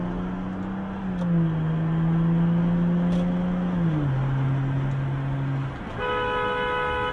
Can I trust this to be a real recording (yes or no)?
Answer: yes